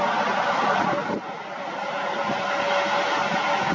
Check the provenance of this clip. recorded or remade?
recorded